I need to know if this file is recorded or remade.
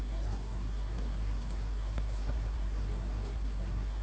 remade